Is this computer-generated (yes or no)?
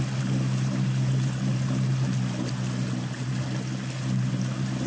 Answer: no